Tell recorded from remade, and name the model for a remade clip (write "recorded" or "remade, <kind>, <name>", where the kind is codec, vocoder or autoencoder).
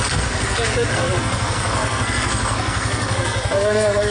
remade, codec, SNAC